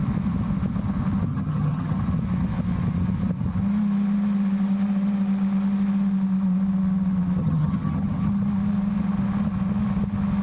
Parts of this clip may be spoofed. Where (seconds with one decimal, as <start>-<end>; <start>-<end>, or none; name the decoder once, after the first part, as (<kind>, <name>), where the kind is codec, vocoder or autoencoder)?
1.3-2.0 (vocoder, HiFi-GAN); 7.4-8.3